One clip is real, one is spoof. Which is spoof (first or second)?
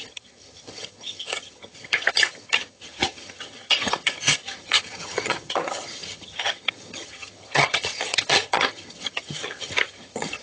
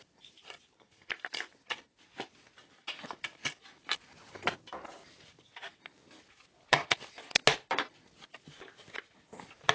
first